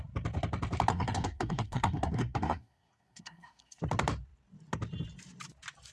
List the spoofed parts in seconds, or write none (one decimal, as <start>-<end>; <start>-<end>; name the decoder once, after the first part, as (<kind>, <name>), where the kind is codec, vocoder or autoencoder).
0.9-3.8 (codec, SNAC)